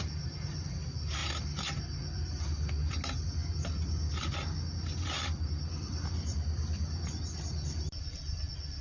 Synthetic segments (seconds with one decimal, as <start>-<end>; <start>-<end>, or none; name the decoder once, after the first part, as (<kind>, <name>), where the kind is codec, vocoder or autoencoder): none